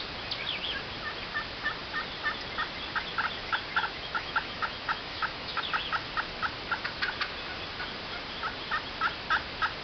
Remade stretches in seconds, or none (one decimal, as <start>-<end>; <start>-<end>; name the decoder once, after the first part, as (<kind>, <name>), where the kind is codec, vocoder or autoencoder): 3.8-5.6 (autoencoder, DAC-VAE)